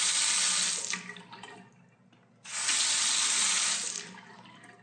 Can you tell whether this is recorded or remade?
recorded